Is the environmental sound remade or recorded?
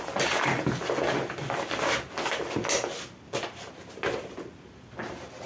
recorded